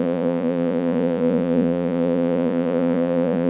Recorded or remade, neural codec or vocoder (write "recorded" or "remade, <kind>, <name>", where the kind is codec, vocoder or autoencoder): remade, vocoder, Vocos